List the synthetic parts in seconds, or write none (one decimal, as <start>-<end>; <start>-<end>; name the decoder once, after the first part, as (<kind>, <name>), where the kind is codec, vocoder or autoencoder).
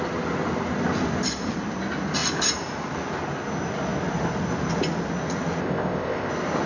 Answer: 5.6-6.3 (codec, ZipCodec)